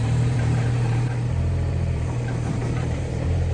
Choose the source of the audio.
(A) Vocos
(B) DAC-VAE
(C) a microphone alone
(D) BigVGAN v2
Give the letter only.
D